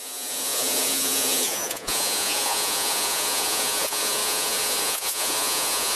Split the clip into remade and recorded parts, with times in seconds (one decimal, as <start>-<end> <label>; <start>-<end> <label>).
0.0-6.0 remade